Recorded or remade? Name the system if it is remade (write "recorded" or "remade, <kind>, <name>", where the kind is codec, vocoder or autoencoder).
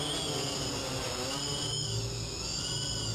recorded